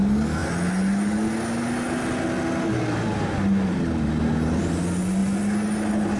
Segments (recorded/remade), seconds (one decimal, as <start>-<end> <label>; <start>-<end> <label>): 0.0-6.2 recorded